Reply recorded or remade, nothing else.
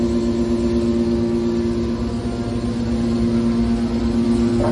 recorded